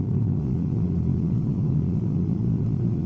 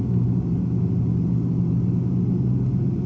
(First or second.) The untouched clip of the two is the second